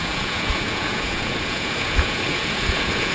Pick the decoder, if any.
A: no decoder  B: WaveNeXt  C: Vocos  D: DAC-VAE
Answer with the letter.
C